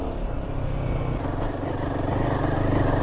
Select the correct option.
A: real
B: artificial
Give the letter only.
A